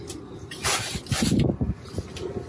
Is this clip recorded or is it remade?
recorded